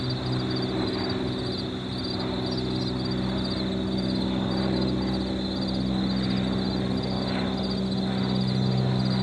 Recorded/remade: recorded